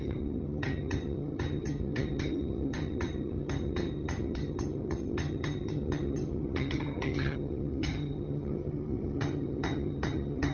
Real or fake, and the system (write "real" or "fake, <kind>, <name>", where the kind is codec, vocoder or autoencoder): fake, vocoder, HiFi-GAN